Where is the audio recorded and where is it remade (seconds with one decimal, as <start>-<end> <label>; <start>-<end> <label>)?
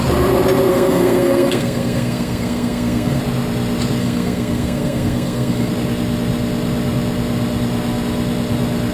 0.0-0.7 recorded; 0.7-3.2 remade; 3.2-4.0 recorded; 4.0-5.7 remade; 5.7-8.9 recorded